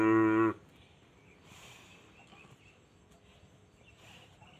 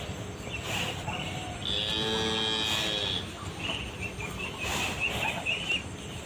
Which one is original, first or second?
second